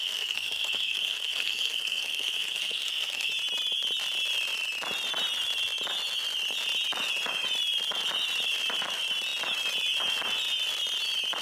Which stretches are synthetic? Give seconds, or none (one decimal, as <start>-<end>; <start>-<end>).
0.0-3.3